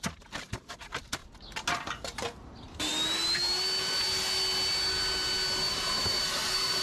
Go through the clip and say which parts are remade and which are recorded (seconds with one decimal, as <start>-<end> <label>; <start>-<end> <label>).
0.0-1.2 remade; 1.2-1.7 recorded; 1.7-2.9 remade; 2.9-5.7 recorded; 5.7-6.8 remade